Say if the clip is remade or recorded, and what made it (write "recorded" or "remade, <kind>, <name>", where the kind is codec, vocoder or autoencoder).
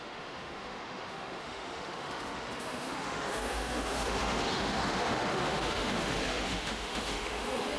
remade, autoencoder, DAC-VAE